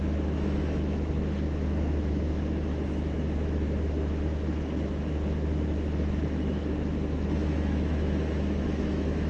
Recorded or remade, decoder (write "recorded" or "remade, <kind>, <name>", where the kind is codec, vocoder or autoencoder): remade, autoencoder, DAC-VAE